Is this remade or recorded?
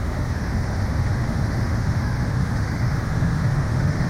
remade